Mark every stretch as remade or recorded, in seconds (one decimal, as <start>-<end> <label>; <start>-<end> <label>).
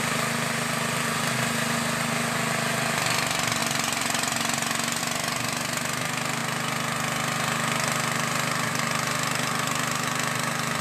0.0-10.8 recorded